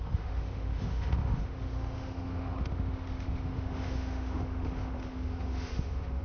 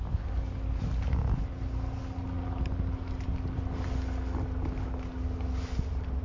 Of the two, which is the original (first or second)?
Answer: second